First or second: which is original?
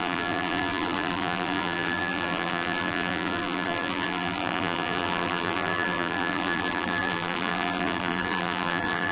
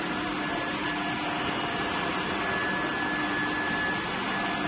second